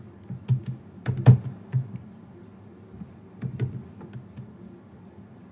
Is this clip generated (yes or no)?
no